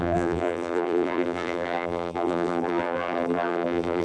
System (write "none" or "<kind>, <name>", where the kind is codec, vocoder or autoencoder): vocoder, BigVGAN v2